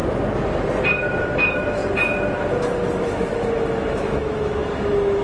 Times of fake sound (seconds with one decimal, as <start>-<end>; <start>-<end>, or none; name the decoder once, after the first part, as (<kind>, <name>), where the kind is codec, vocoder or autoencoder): 1.2-1.8 (autoencoder, DAC-VAE); 3.0-5.2